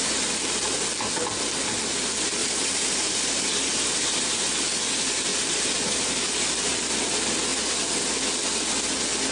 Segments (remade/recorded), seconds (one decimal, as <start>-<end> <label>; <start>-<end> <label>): 0.0-2.4 recorded; 2.4-4.6 remade; 4.6-5.3 recorded; 5.3-6.0 remade; 6.0-9.3 recorded